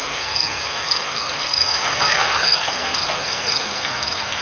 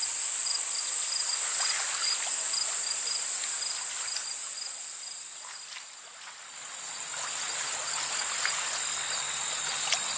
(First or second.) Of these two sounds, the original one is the second